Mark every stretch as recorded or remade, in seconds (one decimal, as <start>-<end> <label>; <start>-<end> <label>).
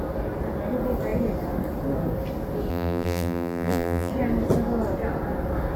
0.0-2.7 recorded; 2.7-4.1 remade; 4.1-5.8 recorded